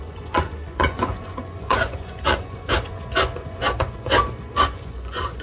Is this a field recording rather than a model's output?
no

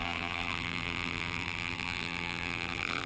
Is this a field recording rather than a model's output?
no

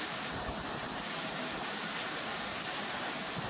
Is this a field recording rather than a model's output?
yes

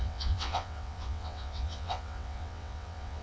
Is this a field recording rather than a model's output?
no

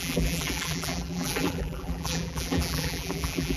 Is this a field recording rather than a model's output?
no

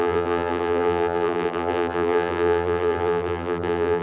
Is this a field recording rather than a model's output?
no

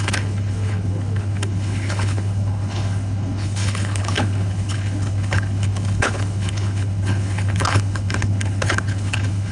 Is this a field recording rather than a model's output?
no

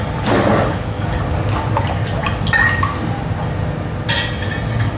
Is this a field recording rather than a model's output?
yes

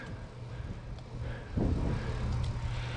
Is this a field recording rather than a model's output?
yes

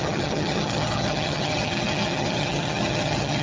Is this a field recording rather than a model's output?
no